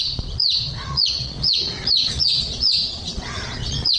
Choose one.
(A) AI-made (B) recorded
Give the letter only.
A